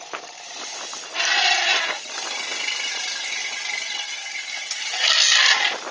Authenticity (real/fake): real